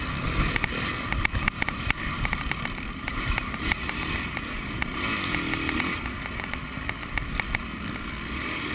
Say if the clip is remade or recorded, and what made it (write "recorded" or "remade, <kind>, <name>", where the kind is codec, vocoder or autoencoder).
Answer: recorded